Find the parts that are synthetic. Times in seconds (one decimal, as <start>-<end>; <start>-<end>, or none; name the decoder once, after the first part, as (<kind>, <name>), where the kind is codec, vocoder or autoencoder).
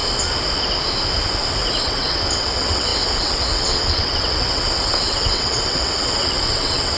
1.8-7.0 (vocoder, WaveNeXt)